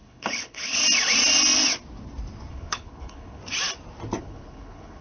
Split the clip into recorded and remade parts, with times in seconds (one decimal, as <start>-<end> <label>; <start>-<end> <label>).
0.0-0.8 remade; 0.8-2.5 recorded; 2.5-3.4 remade; 3.4-4.2 recorded; 4.2-5.0 remade